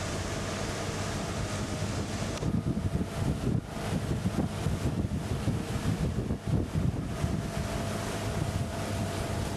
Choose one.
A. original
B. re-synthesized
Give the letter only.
A